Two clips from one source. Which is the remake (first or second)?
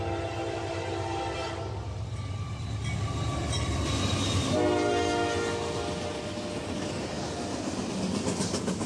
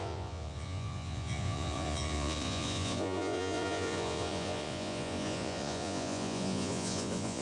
second